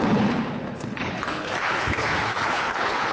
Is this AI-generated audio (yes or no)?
yes